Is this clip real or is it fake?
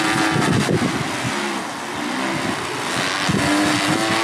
real